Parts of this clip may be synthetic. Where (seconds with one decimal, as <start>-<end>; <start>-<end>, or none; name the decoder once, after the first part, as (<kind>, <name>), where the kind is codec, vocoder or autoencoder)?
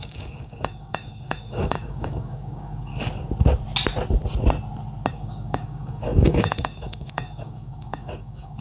0.0-2.9 (codec, DAC); 5.1-8.6